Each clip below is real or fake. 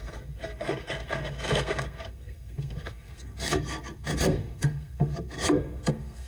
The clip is fake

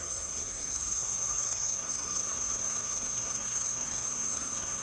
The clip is fake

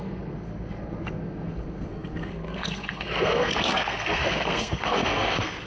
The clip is fake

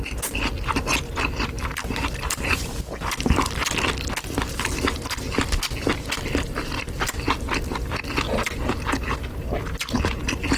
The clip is real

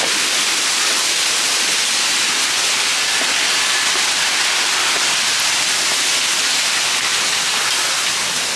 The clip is real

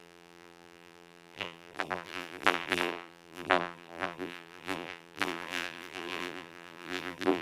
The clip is fake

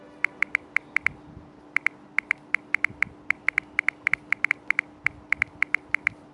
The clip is real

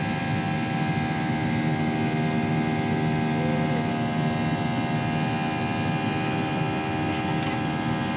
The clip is real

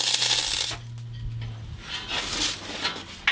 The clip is real